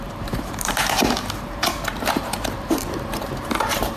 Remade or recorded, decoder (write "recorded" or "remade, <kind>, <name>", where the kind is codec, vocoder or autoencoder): remade, vocoder, BigVGAN v2